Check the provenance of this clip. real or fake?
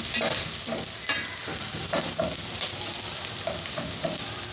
real